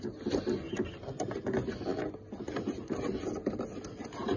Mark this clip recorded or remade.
recorded